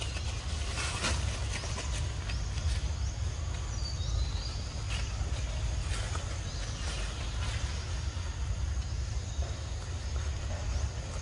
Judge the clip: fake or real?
real